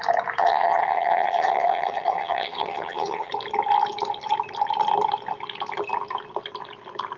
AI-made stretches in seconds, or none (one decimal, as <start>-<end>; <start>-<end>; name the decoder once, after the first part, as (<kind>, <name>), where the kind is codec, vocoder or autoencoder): 0.4-3.3 (vocoder, HiFi-GAN)